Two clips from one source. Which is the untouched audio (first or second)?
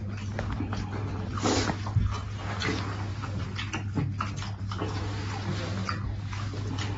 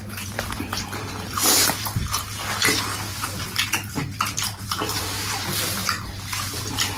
first